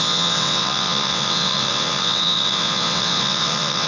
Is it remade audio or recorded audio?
remade